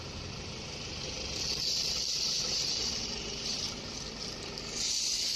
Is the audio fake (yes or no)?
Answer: yes